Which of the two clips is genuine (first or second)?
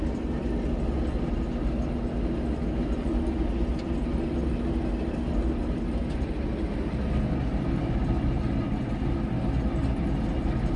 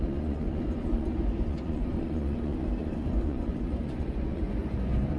first